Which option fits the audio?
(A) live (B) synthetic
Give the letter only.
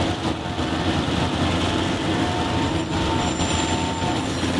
A